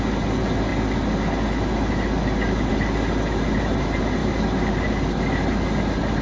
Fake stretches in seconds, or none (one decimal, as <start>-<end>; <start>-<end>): none